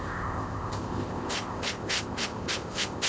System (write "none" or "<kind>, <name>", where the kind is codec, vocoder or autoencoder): codec, ZipCodec